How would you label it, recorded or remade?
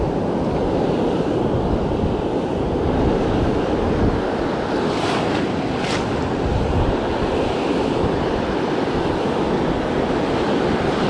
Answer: recorded